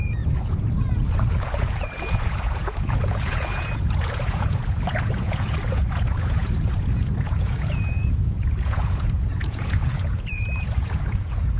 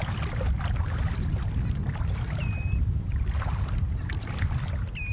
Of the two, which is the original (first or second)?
second